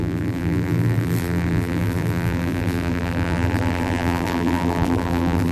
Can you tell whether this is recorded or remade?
remade